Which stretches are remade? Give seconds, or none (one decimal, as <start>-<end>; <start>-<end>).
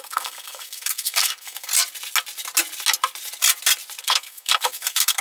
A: 0.0-1.7; 4.0-5.2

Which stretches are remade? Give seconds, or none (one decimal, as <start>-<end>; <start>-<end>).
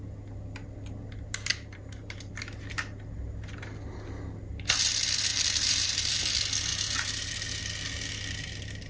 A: 1.5-2.3; 5.3-6.2; 6.7-7.6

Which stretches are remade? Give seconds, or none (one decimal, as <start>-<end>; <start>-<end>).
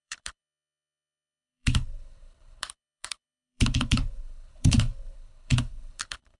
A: 0.0-6.4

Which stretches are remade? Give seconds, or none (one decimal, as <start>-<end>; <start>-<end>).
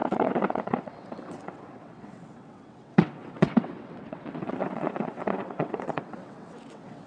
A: 0.0-7.1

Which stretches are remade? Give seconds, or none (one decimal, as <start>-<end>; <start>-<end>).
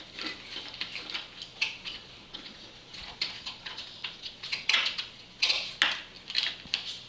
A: 1.5-5.8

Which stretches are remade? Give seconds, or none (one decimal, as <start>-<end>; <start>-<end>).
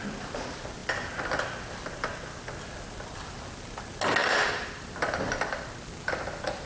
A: none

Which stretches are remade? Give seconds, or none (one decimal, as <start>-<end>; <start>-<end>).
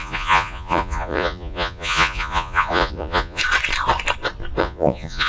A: 0.0-3.4; 4.6-5.3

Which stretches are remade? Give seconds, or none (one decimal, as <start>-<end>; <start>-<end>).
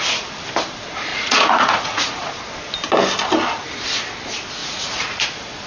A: 1.1-2.3; 4.6-5.7